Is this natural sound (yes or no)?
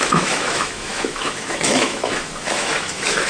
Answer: no